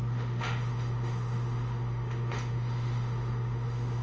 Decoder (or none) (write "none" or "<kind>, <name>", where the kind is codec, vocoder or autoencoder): autoencoder, DAC-VAE